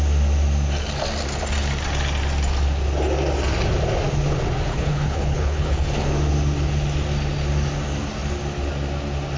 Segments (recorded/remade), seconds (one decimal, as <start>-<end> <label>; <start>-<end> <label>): 0.0-4.7 recorded; 4.7-5.9 remade; 5.9-9.4 recorded